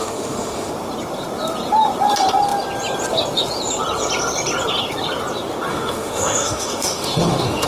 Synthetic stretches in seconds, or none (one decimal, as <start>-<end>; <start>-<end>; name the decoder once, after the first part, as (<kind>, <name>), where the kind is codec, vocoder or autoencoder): 0.0-0.7 (autoencoder, DAC-VAE); 5.7-7.7

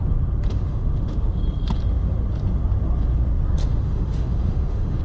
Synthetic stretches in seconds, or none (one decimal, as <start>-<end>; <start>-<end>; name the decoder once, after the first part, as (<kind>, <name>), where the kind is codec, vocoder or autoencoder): 0.5-1.4 (autoencoder, DAC-VAE); 3.6-5.0

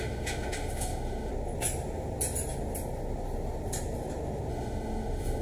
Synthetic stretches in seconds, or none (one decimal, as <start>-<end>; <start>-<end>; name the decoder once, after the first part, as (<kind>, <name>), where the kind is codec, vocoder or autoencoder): 0.0-1.3 (autoencoder, DAC-VAE); 4.5-5.4